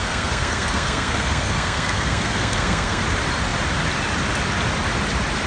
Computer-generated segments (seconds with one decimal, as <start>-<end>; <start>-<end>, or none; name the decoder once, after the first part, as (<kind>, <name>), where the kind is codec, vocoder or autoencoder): 0.0-3.0 (codec, SNAC)